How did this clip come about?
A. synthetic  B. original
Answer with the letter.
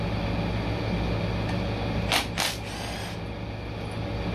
B